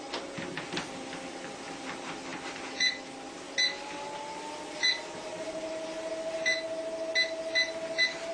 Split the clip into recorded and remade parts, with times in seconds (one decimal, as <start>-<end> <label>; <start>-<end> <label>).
0.0-8.3 recorded